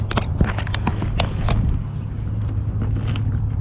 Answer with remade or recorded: recorded